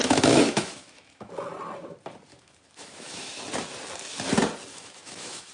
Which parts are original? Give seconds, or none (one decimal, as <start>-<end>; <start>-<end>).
1.3-2.3; 3.4-4.7